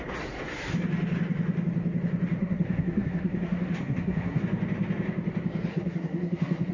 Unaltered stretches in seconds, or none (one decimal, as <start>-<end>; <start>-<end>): 0.0-2.4; 4.4-5.7